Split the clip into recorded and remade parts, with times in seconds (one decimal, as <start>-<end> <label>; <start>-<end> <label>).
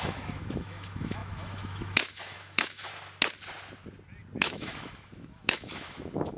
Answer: 0.0-2.9 remade; 2.9-4.4 recorded; 4.4-6.4 remade